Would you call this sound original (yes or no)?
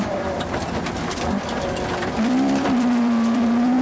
no